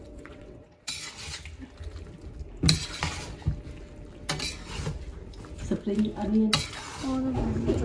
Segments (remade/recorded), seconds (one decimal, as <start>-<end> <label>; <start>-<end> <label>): 0.0-0.9 remade; 0.9-7.8 recorded

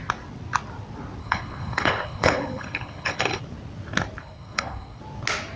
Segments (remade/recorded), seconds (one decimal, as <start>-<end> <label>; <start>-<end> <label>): 0.0-1.2 recorded; 1.2-3.4 remade; 3.4-4.2 recorded; 4.2-5.0 remade; 5.0-5.6 recorded

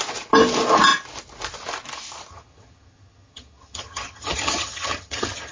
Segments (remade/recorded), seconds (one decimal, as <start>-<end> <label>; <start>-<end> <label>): 0.0-2.3 recorded; 2.3-5.5 remade

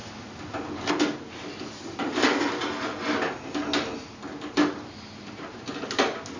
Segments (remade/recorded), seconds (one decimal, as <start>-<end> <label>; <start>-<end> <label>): 0.0-6.4 recorded